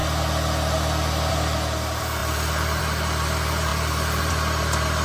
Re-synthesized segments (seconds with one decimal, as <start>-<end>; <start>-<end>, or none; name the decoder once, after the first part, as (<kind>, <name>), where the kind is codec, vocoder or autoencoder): 1.3-5.0 (vocoder, BigVGAN v2)